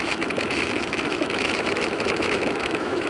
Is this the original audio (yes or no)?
no